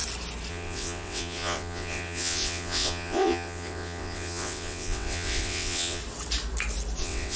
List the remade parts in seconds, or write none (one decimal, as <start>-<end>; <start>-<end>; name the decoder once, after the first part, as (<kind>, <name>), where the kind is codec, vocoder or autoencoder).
0.5-6.0 (vocoder, WaveNeXt); 7.0-7.4